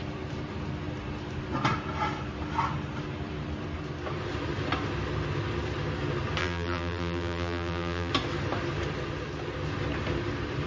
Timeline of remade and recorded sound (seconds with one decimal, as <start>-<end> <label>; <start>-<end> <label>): 0.0-6.4 recorded; 6.4-8.1 remade; 8.1-10.7 recorded